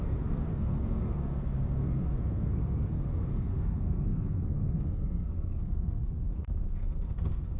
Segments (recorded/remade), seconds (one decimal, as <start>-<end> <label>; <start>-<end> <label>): 0.0-7.6 remade